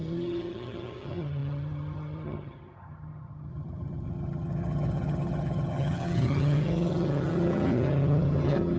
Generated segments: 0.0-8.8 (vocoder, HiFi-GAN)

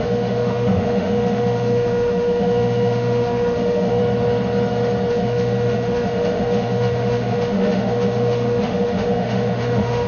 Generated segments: 0.0-4.0 (autoencoder, DAC-VAE); 5.1-10.1

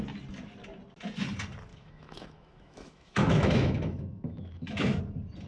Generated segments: 1.7-5.0 (autoencoder, DAC-VAE)

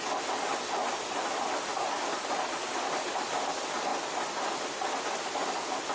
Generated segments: none

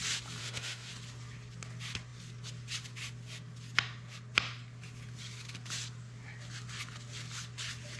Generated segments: 0.4-0.9 (autoencoder, DAC-VAE)

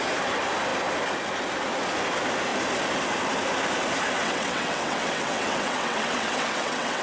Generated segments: 4.2-7.0 (vocoder, WaveNeXt)